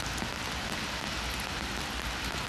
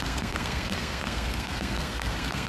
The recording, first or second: first